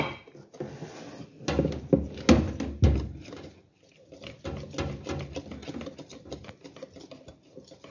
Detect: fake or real real